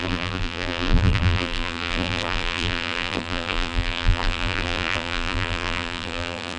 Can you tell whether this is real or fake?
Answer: fake